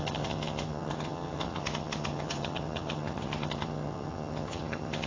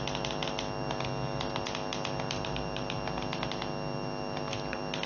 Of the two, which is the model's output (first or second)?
first